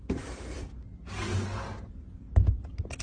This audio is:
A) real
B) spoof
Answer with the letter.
A